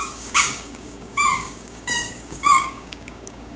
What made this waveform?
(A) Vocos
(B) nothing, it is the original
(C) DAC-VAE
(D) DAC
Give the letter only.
D